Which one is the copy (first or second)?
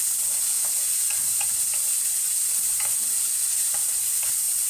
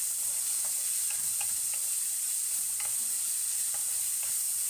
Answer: second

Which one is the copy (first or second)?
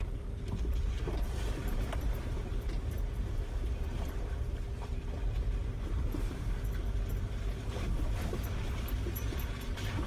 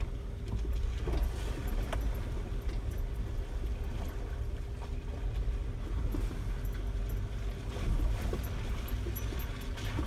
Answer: first